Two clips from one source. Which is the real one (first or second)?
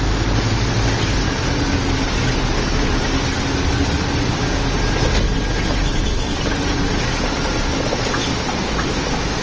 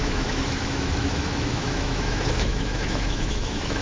first